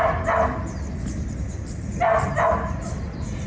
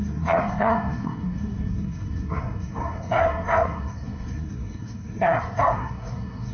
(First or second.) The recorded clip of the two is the first